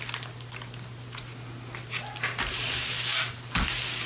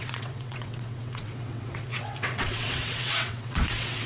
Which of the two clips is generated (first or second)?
second